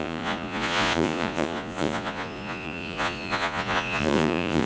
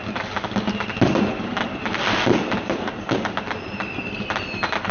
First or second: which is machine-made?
first